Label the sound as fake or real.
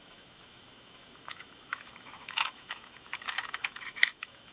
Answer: fake